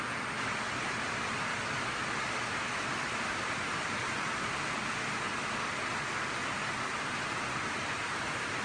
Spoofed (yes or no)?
no